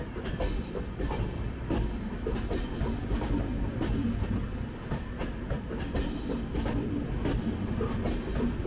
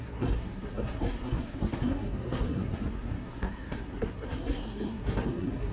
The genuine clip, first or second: first